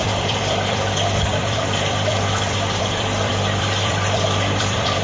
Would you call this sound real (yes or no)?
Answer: no